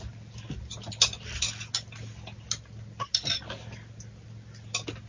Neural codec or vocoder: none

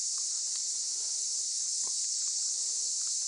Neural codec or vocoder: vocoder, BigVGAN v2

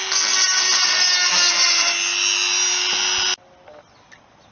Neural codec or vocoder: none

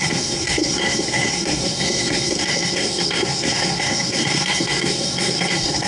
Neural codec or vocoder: codec, SNAC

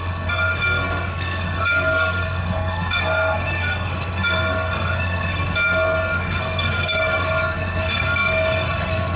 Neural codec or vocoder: codec, SNAC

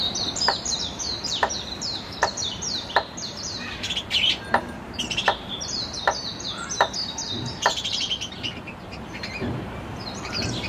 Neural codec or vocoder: vocoder, BigVGAN v2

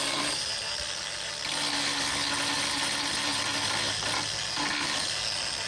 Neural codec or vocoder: none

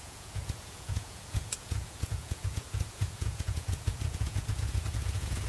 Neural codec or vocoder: vocoder, Vocos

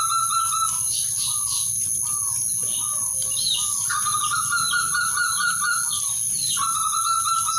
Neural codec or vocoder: none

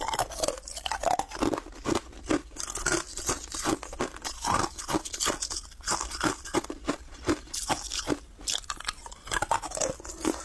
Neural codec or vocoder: none